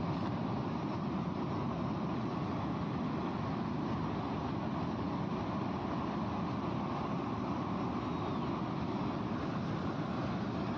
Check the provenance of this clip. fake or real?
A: real